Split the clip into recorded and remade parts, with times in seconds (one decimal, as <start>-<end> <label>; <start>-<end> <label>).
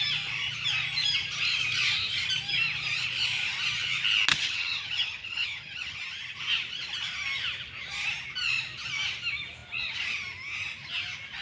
0.0-4.3 recorded; 4.3-6.0 remade; 6.0-11.4 recorded